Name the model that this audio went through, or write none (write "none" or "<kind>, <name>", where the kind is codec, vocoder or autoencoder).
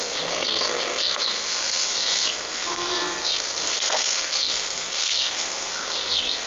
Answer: codec, SNAC